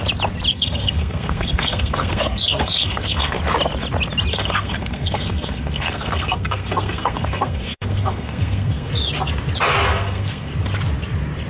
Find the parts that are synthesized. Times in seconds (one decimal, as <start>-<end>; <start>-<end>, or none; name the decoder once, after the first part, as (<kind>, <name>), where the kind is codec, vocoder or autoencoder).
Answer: 0.5-3.4 (codec, SNAC); 4.3-8.9; 9.9-10.5